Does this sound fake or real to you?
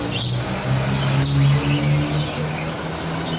real